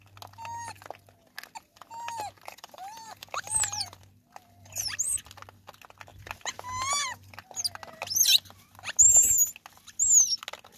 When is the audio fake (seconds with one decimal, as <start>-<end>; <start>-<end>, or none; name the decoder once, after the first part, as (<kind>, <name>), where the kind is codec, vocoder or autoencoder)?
2.5-4.0 (vocoder, BigVGAN v2)